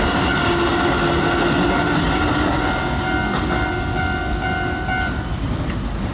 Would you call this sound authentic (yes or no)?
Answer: yes